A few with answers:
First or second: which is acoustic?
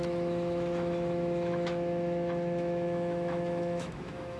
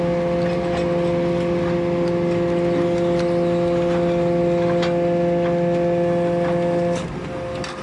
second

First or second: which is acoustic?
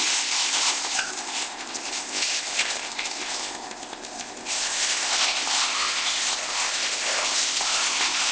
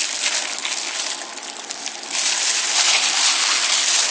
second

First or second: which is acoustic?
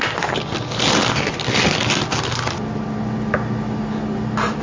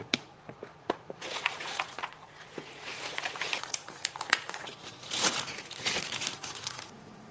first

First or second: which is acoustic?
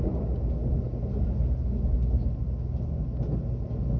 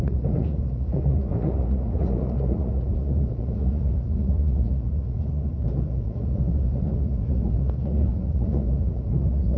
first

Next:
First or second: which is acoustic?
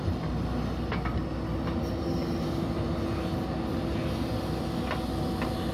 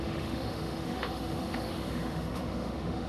first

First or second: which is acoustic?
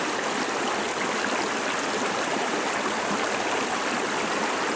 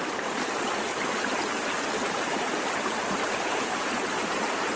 first